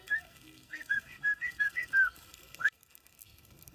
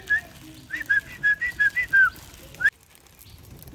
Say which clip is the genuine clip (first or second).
second